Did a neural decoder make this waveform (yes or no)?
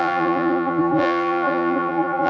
yes